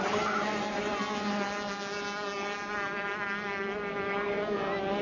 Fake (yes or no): no